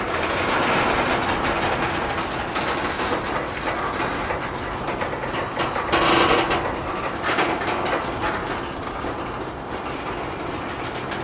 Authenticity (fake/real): real